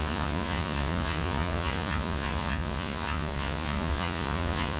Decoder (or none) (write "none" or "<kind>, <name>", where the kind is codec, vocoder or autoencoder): vocoder, Vocos